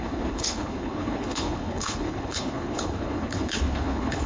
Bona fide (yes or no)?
no